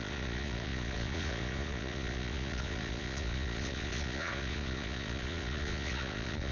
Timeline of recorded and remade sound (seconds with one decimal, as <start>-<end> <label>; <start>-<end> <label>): 0.0-6.5 remade